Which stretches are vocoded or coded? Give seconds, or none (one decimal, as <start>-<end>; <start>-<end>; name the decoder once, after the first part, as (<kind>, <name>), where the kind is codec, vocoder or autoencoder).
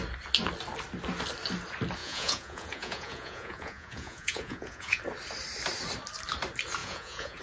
2.0-5.0 (vocoder, Vocos); 6.8-7.4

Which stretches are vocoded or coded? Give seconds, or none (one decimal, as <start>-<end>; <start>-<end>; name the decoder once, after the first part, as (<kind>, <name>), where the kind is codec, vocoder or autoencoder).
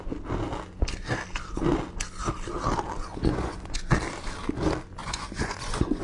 3.1-3.8 (vocoder, Vocos); 5.0-6.0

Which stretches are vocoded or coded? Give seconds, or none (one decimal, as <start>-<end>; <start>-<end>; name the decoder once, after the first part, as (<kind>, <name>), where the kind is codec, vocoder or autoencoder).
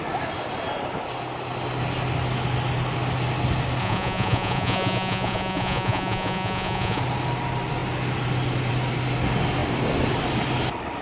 3.8-7.0 (vocoder, Vocos)